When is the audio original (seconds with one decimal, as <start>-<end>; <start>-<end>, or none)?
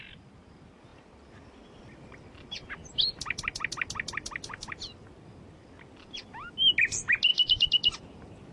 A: 0.0-7.3; 7.9-8.5